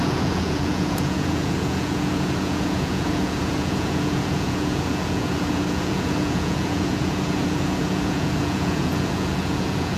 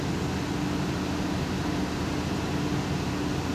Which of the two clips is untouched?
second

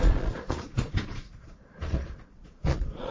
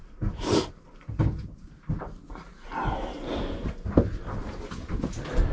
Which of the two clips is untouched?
second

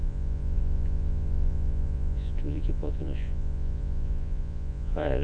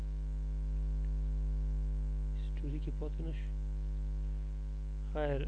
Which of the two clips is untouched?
second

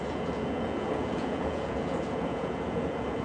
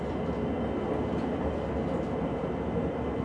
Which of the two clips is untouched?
second